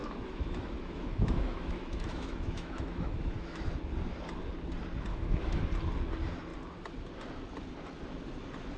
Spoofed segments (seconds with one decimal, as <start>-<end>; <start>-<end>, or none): 0.0-3.8; 5.1-5.6